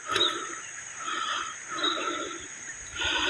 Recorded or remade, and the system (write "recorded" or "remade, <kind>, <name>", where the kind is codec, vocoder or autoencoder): remade, vocoder, BigVGAN v2